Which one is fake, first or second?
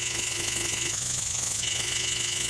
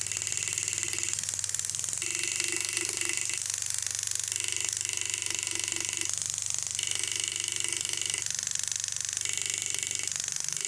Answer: first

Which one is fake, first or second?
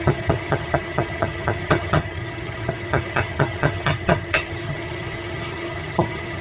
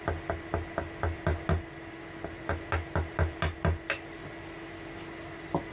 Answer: first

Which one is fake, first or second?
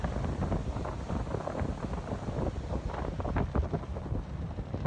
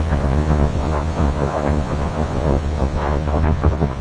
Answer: second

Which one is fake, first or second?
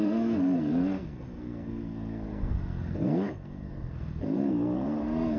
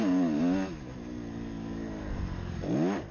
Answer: first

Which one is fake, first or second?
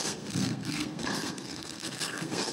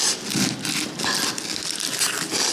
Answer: first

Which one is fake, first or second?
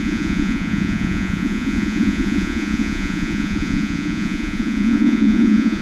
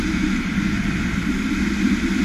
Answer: first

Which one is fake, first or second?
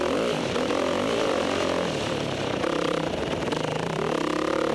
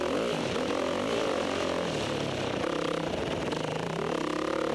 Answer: first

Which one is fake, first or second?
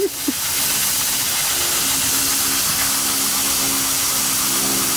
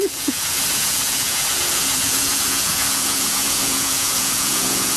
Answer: second